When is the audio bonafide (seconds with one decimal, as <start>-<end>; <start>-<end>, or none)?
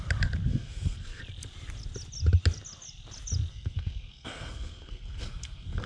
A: 0.0-0.5; 1.2-3.5